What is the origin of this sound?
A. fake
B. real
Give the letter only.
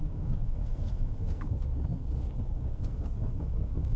A